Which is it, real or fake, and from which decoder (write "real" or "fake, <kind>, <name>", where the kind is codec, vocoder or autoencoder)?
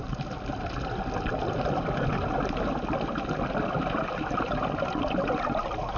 real